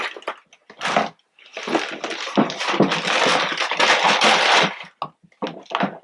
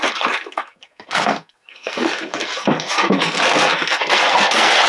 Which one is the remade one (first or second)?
second